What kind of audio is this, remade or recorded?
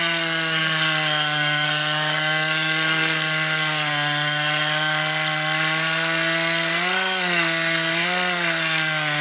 remade